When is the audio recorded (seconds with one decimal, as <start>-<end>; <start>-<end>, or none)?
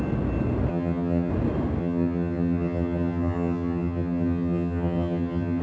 0.0-0.7; 1.3-1.8